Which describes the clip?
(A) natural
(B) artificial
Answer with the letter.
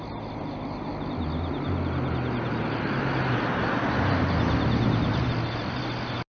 A